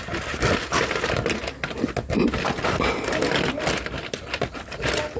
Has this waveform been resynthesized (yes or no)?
no